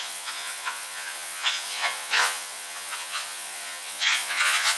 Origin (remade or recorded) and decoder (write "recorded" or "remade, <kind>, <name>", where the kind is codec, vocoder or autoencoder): remade, vocoder, Vocos